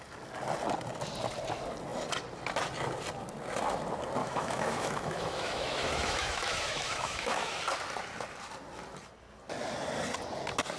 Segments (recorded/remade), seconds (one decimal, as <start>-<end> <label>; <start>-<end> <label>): 0.0-4.2 recorded; 4.2-7.6 remade; 7.6-10.8 recorded